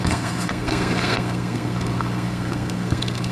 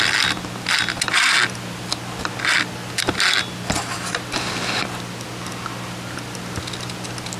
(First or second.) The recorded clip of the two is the second